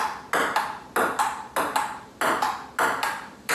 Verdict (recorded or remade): recorded